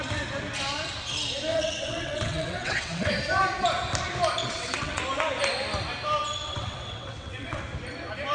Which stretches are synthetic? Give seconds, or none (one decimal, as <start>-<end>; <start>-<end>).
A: 1.5-3.1; 4.4-5.0; 6.4-7.6

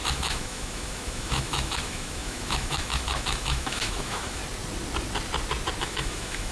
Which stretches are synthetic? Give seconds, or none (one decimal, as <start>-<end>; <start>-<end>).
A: 0.0-4.4; 5.8-6.5

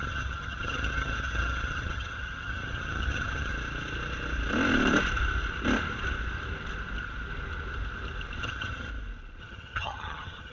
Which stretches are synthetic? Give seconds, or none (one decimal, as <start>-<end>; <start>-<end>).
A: 0.0-3.5; 8.4-8.9; 9.4-10.5